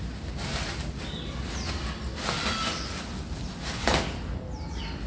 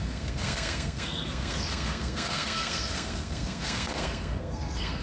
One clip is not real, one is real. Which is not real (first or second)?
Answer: second